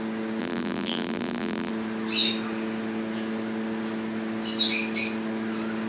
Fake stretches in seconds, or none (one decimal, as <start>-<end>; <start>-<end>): 0.4-1.7